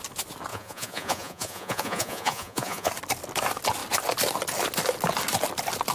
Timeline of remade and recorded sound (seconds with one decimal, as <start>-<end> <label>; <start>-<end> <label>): 0.0-0.5 recorded; 0.5-2.9 remade; 2.9-5.9 recorded

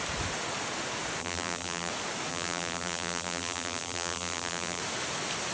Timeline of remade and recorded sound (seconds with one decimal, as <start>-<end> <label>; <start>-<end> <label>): 0.0-1.2 recorded; 1.2-1.9 remade; 1.9-2.3 recorded; 2.3-4.8 remade; 4.8-5.5 recorded

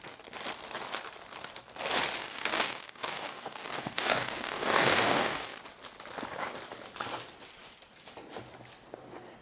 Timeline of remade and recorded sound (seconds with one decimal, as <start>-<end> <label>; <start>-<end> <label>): 0.0-2.2 recorded; 2.2-5.6 remade; 5.6-9.4 recorded

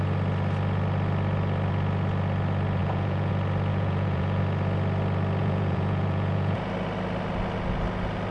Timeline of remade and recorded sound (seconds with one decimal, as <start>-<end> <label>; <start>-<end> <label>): 0.0-2.8 recorded; 2.8-3.3 remade; 3.3-3.7 recorded; 3.7-4.4 remade; 4.4-5.4 recorded; 5.4-6.7 remade; 6.7-8.3 recorded

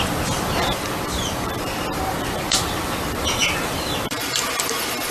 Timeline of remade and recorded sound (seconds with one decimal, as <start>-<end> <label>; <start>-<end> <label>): 0.0-5.1 remade

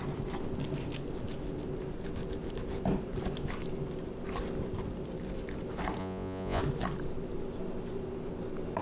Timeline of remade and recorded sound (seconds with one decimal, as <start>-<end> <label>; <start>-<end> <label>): 0.0-6.0 recorded; 6.0-6.6 remade; 6.6-8.8 recorded

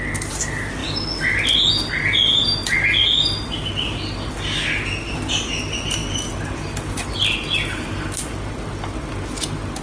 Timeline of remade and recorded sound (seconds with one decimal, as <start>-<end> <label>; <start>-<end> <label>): 0.0-9.8 recorded

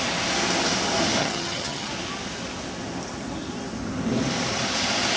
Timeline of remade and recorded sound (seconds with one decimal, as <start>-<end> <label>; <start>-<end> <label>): 0.0-1.2 recorded; 1.2-1.9 remade; 1.9-5.2 recorded